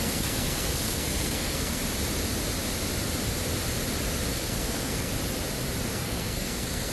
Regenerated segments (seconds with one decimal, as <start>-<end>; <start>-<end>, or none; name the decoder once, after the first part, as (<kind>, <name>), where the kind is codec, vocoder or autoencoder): 0.0-1.8 (codec, SNAC); 4.3-5.1; 5.9-6.9